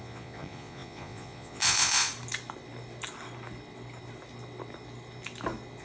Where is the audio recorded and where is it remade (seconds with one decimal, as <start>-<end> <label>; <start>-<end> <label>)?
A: 0.0-2.1 remade; 2.1-5.8 recorded